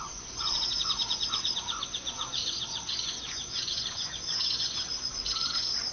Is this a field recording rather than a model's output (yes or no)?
no